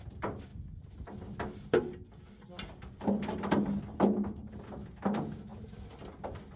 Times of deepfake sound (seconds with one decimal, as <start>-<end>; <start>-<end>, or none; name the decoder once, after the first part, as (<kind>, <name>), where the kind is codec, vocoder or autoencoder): none